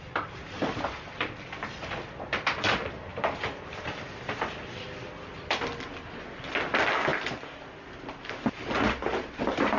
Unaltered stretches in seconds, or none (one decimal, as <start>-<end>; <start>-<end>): 0.0-9.8